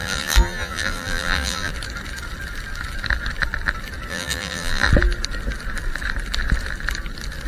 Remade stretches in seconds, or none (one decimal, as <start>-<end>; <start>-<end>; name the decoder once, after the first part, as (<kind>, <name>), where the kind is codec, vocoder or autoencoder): 0.0-1.7 (vocoder, BigVGAN v2); 4.1-4.9